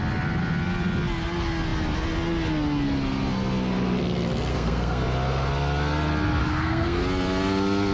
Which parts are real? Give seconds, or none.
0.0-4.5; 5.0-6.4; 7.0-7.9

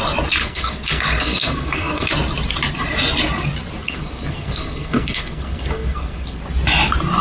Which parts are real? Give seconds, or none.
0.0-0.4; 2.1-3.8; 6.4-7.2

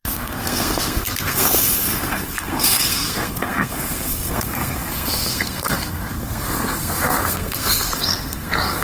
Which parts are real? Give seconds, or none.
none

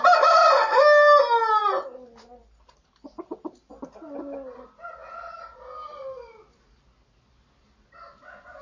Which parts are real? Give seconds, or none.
0.0-8.6